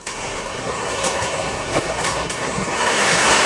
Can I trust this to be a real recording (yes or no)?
no